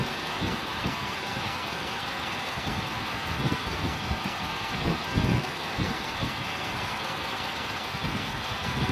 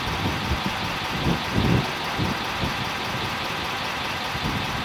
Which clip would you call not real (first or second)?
first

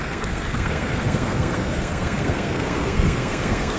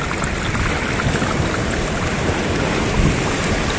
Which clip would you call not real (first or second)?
first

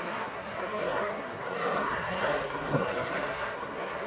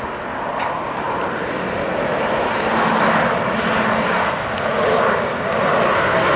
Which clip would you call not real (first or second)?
first